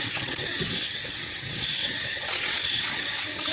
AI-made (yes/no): yes